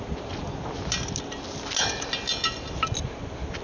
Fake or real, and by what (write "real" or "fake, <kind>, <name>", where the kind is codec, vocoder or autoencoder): real